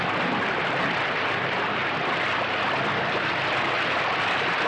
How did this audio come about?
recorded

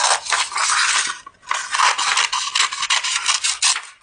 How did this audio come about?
recorded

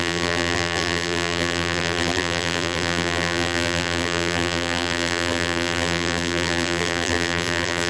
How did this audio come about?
remade